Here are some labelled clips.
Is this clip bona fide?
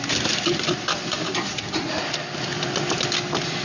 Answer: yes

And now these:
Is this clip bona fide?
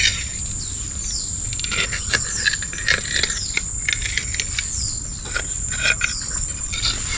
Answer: yes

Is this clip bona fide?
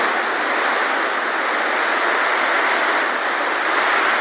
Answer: yes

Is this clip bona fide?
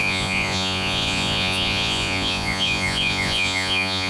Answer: no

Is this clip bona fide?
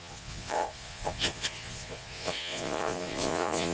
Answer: no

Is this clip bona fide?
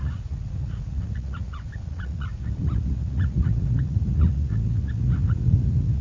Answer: no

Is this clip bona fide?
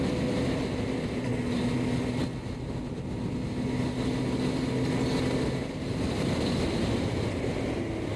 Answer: yes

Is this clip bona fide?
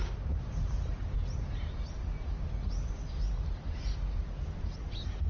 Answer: yes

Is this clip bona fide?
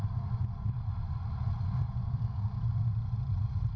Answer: yes